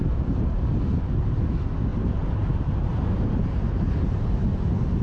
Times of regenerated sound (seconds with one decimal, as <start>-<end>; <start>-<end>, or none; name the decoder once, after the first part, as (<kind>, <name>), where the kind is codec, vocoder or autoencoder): 0.0-0.7 (vocoder, BigVGAN v2); 1.9-4.4